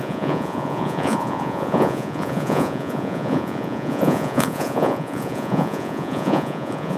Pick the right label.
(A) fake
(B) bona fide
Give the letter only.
A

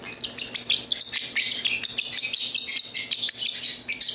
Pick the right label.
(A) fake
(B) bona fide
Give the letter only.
B